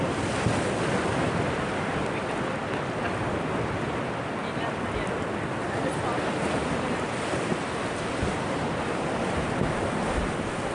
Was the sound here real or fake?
real